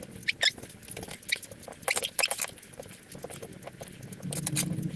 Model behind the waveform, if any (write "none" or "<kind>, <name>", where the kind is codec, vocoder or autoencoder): none